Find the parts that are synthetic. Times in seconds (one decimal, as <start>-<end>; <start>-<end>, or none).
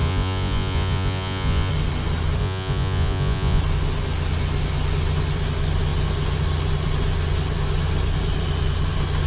0.0-1.7; 2.4-3.6